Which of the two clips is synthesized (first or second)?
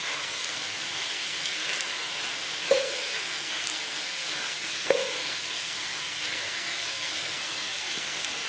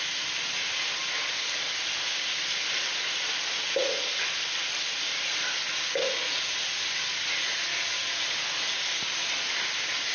first